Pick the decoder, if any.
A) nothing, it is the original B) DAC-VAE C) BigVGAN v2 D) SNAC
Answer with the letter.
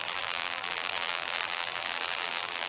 C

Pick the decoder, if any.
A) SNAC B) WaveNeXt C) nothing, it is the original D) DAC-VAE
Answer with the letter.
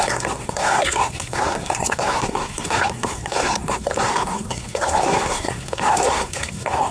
A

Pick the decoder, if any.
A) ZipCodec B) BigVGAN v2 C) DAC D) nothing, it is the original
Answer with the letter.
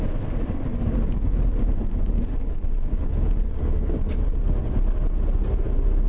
D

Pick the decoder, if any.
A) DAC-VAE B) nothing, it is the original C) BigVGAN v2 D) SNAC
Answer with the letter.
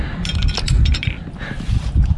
B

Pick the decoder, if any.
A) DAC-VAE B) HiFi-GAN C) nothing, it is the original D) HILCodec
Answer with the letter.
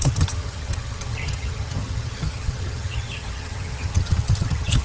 B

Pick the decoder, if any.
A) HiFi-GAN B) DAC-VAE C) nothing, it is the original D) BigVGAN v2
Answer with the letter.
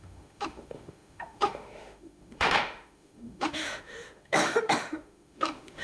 B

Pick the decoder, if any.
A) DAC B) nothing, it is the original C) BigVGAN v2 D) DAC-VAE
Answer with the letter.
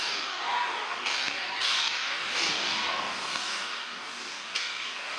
A